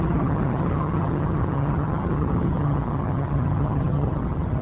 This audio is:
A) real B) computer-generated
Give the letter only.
B